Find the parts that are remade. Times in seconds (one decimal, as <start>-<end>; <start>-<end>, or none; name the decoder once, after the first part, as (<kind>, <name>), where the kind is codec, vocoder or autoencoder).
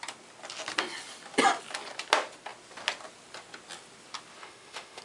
4.4-5.0 (autoencoder, DAC-VAE)